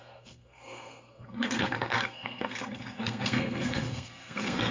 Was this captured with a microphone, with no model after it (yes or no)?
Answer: no